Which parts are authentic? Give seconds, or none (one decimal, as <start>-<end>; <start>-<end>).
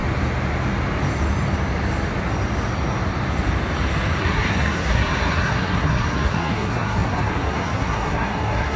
0.0-4.2